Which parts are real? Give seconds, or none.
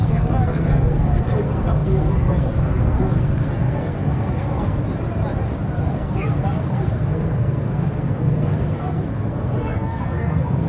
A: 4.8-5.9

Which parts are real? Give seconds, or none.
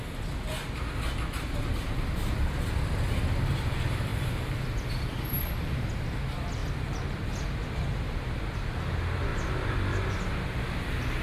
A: 0.0-11.2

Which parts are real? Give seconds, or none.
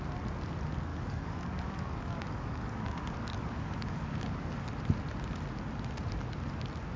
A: 0.0-0.9; 4.7-7.0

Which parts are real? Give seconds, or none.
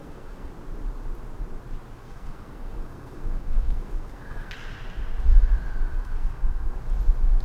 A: 0.5-2.0; 4.5-5.9; 6.8-7.4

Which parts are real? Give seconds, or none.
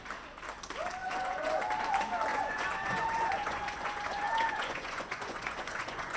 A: 0.0-1.0; 1.7-2.3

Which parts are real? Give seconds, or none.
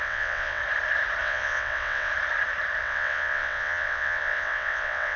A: 0.6-1.2; 2.1-2.8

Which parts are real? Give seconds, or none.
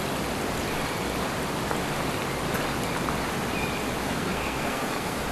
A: 0.0-4.0